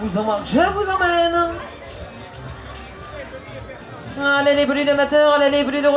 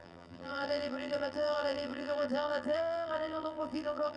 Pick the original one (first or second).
first